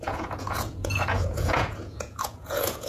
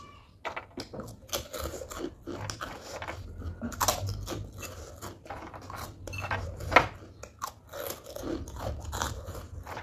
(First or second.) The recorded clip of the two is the second